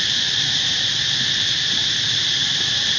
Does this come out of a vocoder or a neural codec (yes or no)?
no